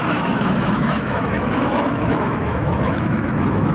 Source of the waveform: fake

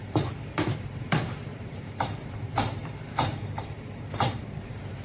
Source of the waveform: fake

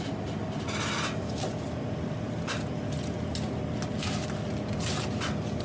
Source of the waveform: real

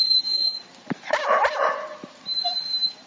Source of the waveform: fake